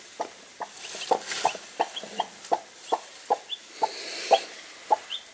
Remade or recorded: recorded